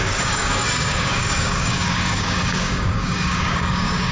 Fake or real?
fake